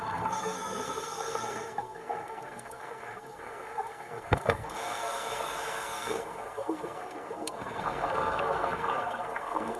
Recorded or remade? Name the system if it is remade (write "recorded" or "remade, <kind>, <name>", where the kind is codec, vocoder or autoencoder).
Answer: remade, codec, SNAC